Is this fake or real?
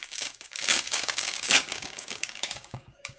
fake